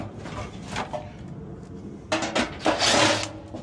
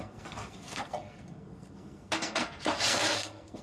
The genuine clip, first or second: first